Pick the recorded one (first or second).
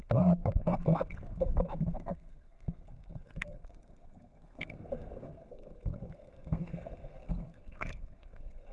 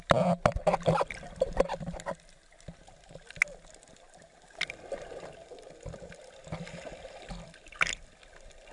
second